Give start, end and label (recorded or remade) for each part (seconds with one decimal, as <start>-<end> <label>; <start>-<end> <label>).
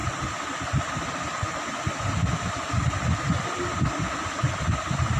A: 0.0-5.2 recorded